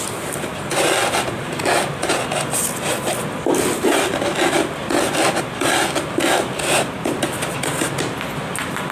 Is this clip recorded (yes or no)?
yes